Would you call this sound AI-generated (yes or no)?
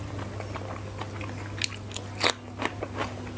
no